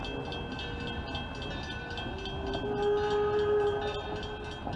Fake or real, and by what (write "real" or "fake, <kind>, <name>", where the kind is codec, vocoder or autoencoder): real